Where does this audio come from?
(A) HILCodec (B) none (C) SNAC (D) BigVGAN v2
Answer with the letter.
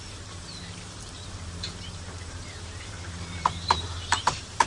D